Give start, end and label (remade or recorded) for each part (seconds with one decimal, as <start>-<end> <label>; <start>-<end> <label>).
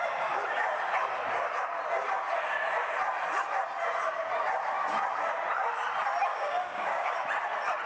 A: 0.0-6.3 recorded; 6.3-7.1 remade; 7.1-7.9 recorded